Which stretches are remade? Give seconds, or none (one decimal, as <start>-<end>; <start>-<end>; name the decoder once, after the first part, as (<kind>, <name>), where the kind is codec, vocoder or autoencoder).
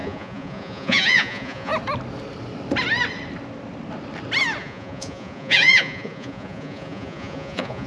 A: 0.0-1.7 (vocoder, Vocos); 4.6-7.9